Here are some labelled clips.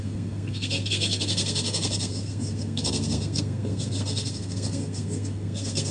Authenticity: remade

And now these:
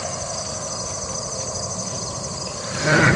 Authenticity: recorded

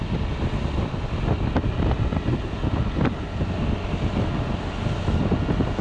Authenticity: recorded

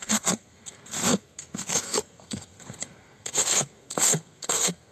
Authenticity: remade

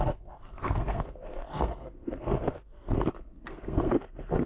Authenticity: remade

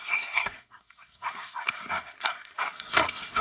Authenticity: remade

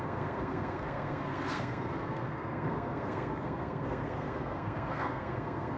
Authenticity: remade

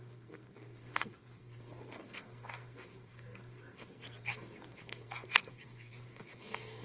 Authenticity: remade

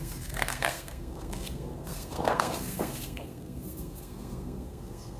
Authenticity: remade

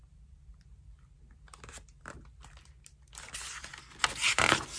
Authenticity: recorded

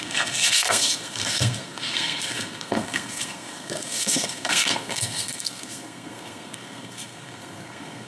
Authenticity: remade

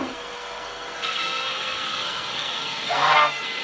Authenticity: remade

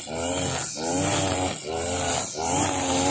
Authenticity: recorded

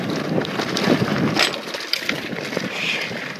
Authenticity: recorded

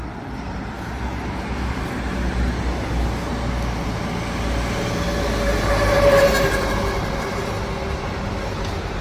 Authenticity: recorded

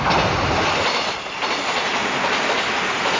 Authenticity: recorded